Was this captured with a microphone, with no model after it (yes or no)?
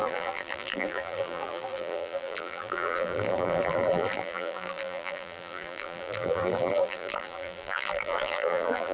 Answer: no